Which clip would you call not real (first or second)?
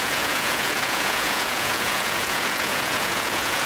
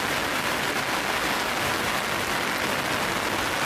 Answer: first